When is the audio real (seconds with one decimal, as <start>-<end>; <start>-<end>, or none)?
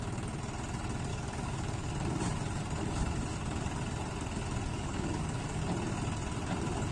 0.0-1.1; 1.9-4.7; 5.6-6.9